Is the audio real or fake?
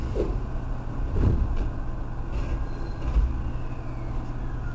real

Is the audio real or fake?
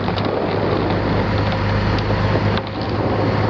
real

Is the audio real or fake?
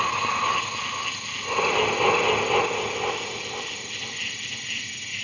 real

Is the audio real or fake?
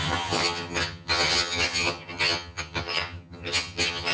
fake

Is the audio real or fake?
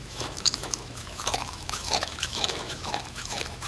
fake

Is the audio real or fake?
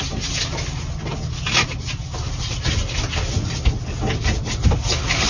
real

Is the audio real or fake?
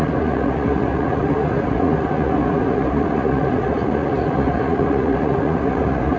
fake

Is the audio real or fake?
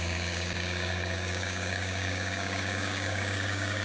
fake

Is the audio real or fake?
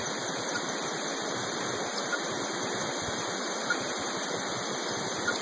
real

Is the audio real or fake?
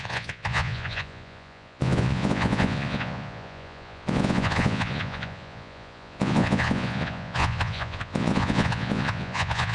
fake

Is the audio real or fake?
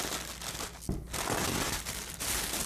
real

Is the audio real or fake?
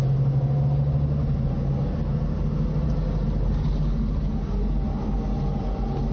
real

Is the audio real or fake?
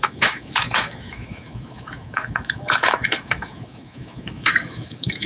fake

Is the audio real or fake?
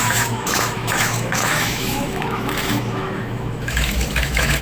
fake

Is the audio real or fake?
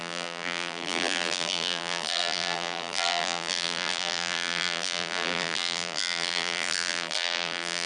fake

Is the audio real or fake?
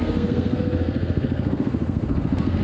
fake